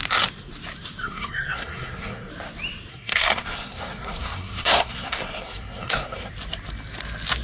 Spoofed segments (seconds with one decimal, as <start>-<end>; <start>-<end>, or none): 1.0-2.3; 2.9-6.3